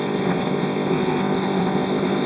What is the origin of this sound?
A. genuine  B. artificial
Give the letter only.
B